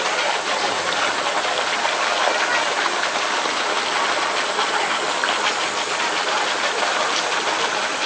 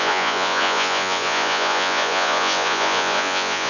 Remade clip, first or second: second